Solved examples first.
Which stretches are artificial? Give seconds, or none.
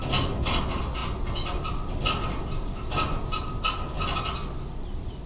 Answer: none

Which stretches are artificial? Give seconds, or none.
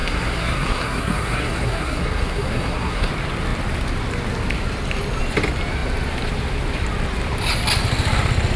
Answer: 0.0-3.1 (codec, SNAC)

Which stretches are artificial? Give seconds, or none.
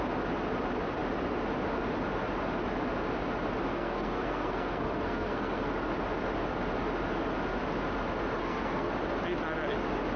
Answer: 3.7-5.7 (codec, SNAC); 8.4-8.9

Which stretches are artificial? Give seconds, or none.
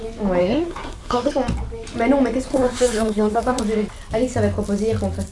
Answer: 0.4-1.3 (codec, SNAC); 2.5-3.6